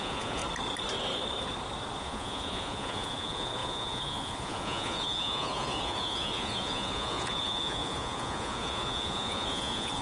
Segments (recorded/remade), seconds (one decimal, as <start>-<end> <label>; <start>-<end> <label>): 0.0-0.4 remade; 0.4-2.0 recorded; 2.0-10.0 remade

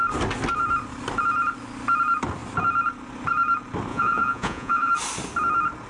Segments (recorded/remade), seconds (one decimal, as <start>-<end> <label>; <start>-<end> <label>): 0.0-3.9 recorded; 3.9-4.9 remade; 4.9-5.9 recorded

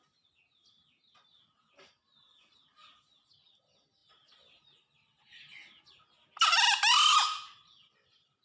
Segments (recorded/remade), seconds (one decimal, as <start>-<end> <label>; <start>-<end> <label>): 0.0-8.4 recorded

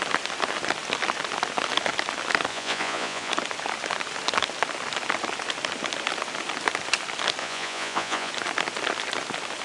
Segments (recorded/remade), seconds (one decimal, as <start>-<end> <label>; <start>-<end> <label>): 0.0-2.5 recorded; 2.5-3.3 remade; 3.3-7.4 recorded; 7.4-8.3 remade; 8.3-9.6 recorded

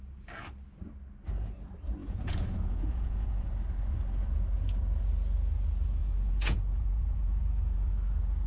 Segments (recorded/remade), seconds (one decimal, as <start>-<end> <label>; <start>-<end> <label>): 0.0-2.0 recorded; 2.0-3.5 remade; 3.5-6.0 recorded; 6.0-7.9 remade; 7.9-8.5 recorded

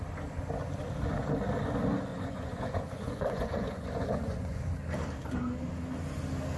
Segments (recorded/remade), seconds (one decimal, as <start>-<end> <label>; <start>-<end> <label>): 0.0-2.1 recorded; 2.1-4.6 remade; 4.6-6.6 recorded

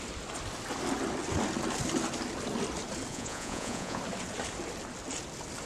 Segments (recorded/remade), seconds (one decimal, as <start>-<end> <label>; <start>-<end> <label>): 0.0-3.1 recorded; 3.1-4.0 remade; 4.0-5.7 recorded